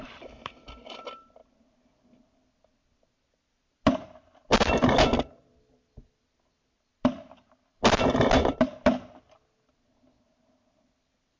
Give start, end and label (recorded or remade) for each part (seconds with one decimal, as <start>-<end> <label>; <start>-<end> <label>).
0.0-11.4 recorded